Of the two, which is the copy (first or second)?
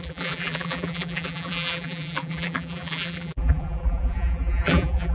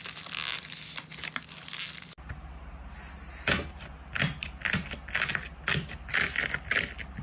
first